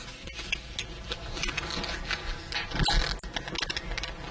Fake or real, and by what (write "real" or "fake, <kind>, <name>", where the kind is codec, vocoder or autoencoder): real